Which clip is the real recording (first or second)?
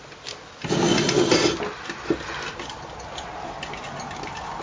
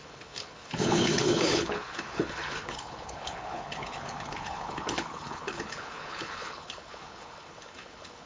first